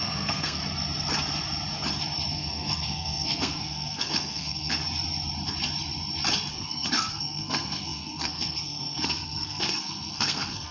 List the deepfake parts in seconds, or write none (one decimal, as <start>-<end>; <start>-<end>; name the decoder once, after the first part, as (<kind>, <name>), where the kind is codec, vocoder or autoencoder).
0.0-0.6 (codec, SNAC); 2.3-4.8; 6.5-10.7